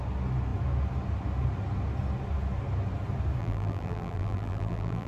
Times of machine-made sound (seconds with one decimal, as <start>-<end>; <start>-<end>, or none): 3.4-5.1

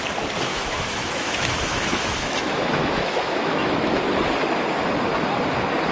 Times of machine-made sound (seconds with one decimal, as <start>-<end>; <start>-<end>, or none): 0.5-4.0

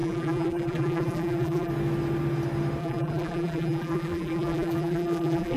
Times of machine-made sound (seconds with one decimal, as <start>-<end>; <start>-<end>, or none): 0.0-1.7; 2.8-5.6

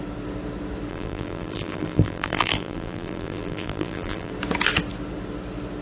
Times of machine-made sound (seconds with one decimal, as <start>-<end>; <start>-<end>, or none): 0.9-4.3

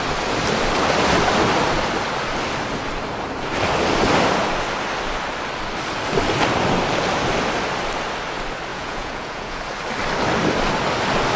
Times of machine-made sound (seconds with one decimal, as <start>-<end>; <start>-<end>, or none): 8.7-9.6

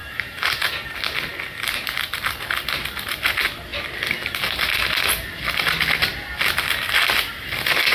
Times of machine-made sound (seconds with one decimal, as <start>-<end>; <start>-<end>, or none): 0.0-0.7

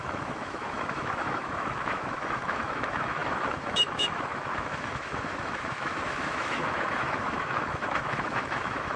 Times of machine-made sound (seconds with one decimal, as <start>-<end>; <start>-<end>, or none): 0.0-9.0

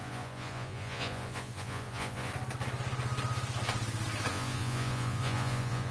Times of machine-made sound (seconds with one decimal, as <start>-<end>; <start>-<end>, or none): 0.0-2.3; 4.3-5.9